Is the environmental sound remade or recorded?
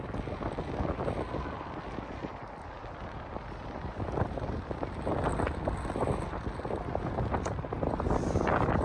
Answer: recorded